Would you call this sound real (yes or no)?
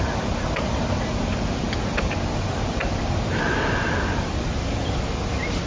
yes